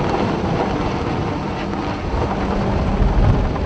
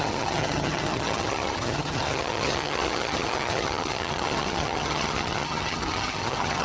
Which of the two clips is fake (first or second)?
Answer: second